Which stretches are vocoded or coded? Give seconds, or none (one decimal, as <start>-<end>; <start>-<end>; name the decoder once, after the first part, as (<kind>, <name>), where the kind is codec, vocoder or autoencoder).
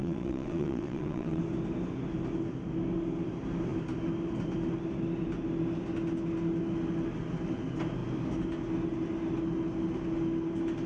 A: 0.0-1.4 (vocoder, WaveNeXt)